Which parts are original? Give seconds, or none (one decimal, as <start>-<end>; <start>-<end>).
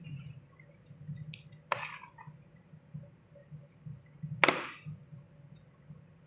0.0-6.3